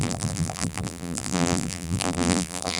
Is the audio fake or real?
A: fake